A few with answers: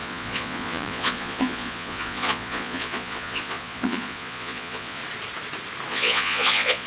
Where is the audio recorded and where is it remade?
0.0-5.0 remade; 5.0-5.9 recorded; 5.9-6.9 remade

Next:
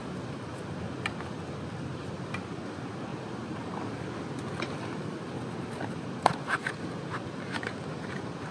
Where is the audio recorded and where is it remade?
0.0-8.5 recorded